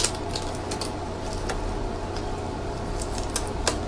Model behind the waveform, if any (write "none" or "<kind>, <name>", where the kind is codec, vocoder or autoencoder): none